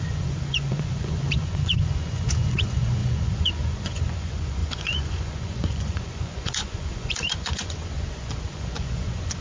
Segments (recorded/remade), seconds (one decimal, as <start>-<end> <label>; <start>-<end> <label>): 0.0-9.4 remade

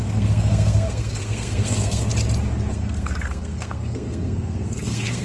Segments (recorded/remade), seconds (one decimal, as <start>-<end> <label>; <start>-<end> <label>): 0.0-2.1 remade; 2.1-2.7 recorded; 2.7-5.2 remade

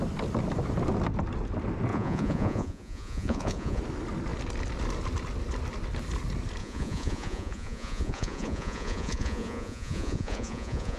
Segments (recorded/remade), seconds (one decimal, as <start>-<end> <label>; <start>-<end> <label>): 0.0-1.9 recorded; 1.9-3.8 remade; 3.8-6.6 recorded; 6.6-11.0 remade

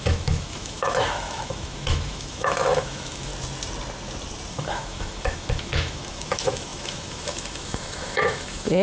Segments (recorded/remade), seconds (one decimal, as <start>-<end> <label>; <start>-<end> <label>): 0.0-3.3 remade; 3.3-4.5 recorded; 4.5-8.8 remade

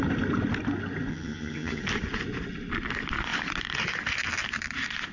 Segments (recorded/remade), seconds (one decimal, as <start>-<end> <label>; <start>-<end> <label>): 0.0-1.1 recorded; 1.1-1.8 remade; 1.8-5.1 recorded

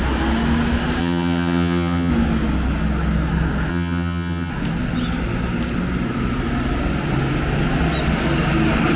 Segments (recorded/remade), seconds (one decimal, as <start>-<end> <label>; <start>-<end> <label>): 0.0-1.0 recorded; 1.0-2.1 remade; 2.1-3.7 recorded; 3.7-4.5 remade; 4.5-9.0 recorded

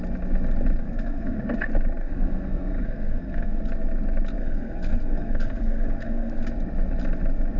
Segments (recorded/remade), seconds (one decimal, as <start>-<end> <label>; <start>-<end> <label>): 0.0-0.8 recorded; 0.8-1.4 remade; 1.4-2.0 recorded; 2.0-3.6 remade; 3.6-4.4 recorded; 4.4-6.4 remade; 6.4-7.6 recorded

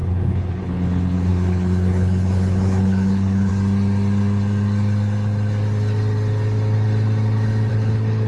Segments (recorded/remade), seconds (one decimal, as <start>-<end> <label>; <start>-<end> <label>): 0.0-3.5 remade; 3.5-7.7 recorded; 7.7-8.3 remade